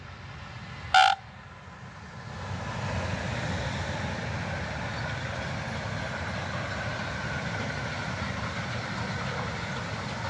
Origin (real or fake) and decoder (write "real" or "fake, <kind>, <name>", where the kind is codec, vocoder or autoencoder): real